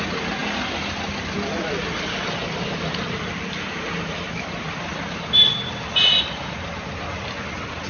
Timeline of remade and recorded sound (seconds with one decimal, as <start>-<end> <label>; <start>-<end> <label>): 0.0-7.9 remade